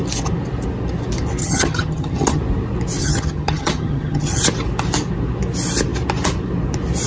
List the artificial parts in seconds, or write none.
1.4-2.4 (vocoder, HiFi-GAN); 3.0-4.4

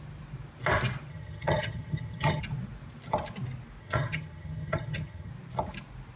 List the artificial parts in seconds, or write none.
1.1-2.4 (vocoder, HiFi-GAN); 3.8-5.3

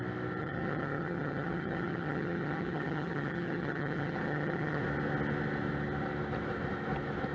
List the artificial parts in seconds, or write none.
0.4-4.8 (vocoder, HiFi-GAN)